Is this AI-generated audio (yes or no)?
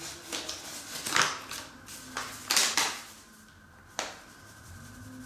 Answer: no